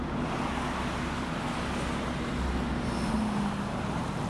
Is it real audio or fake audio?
real